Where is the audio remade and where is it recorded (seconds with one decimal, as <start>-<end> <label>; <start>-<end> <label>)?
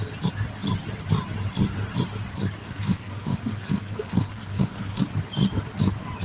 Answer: 0.0-2.6 recorded; 2.6-5.0 remade; 5.0-6.2 recorded